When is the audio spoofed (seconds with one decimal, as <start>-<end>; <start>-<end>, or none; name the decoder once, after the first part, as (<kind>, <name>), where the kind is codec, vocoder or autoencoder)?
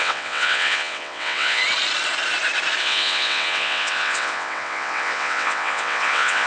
0.0-1.6 (vocoder, WaveNeXt); 2.8-6.5